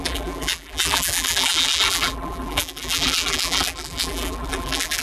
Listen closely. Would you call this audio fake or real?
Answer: fake